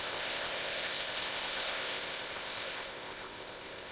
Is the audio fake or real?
fake